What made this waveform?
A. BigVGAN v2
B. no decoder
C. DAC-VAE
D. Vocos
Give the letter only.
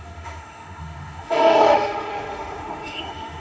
C